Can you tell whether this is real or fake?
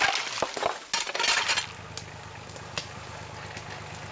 real